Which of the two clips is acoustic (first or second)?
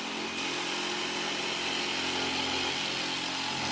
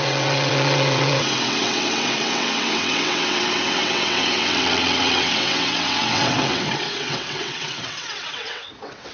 first